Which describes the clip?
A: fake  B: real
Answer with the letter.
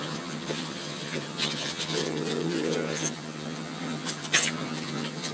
A